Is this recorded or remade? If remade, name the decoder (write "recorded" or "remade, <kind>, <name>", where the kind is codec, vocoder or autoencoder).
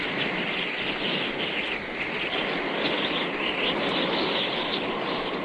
recorded